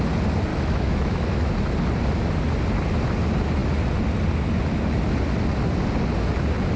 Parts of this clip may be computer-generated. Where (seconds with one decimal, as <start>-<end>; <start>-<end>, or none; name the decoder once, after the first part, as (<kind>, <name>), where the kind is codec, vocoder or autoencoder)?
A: 0.5-1.5 (autoencoder, DAC-VAE)